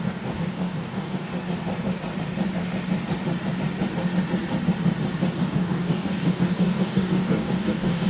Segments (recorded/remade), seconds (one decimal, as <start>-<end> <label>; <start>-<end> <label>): 0.0-1.3 remade; 1.3-5.4 recorded; 5.4-8.1 remade